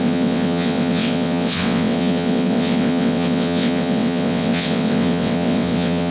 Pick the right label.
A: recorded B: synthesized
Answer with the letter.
B